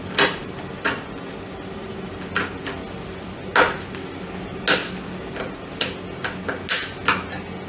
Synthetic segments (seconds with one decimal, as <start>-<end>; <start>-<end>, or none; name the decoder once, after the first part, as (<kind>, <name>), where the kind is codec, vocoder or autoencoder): none